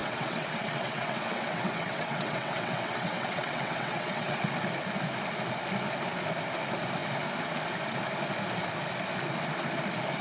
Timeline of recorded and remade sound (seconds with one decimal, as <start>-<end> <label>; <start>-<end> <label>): 0.0-4.5 remade; 4.5-10.2 recorded